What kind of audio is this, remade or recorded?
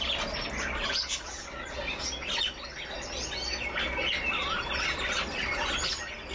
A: recorded